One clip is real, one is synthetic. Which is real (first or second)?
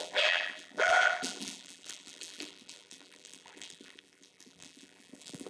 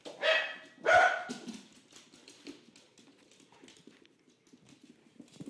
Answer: second